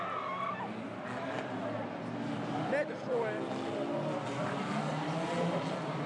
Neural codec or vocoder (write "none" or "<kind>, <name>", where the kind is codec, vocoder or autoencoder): none